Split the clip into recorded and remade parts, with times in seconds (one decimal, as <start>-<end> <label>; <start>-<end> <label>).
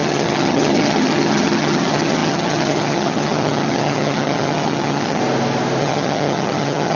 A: 0.0-5.2 remade; 5.2-5.8 recorded; 5.8-6.9 remade